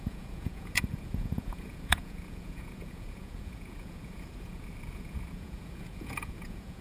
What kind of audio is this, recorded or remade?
remade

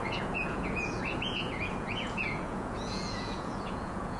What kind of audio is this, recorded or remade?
remade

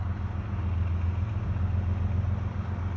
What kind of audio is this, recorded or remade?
recorded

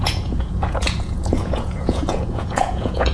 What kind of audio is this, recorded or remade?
remade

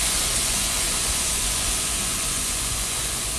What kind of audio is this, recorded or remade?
remade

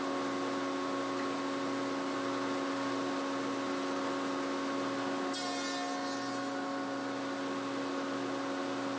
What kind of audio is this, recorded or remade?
recorded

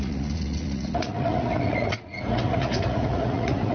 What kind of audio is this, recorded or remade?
remade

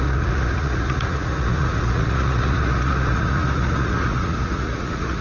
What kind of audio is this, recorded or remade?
remade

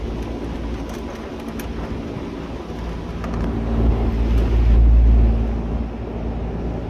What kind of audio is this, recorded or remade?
recorded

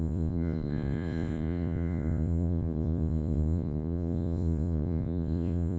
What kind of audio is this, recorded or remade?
remade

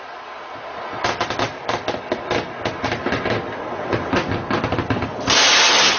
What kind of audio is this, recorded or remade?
recorded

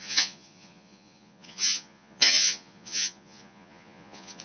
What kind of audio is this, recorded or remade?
remade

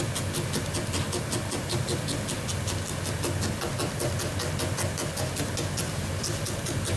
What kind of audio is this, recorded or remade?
recorded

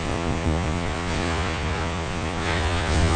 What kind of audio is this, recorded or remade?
remade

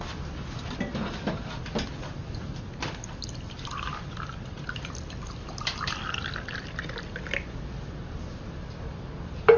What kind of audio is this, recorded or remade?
recorded